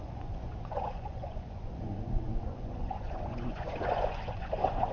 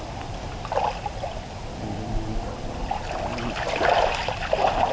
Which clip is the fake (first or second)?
first